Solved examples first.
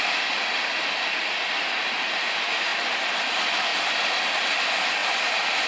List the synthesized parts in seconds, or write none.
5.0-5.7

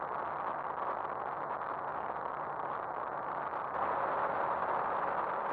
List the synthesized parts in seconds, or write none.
none

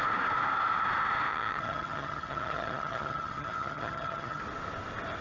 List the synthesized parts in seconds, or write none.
1.3-4.4

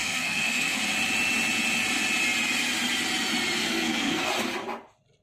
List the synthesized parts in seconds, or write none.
0.0-0.8; 3.6-4.3

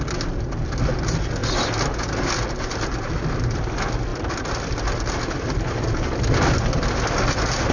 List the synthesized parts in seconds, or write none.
4.1-4.7